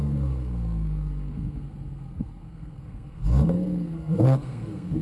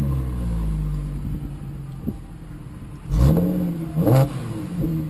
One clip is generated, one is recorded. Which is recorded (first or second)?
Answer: second